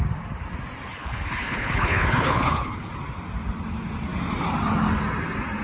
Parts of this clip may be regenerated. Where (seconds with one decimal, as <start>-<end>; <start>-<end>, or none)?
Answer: 0.9-2.9